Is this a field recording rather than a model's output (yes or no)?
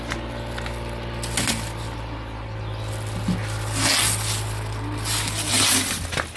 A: yes